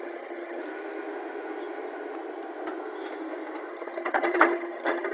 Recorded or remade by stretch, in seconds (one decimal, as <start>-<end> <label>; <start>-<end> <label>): 0.0-0.6 remade; 0.6-3.7 recorded; 3.7-5.1 remade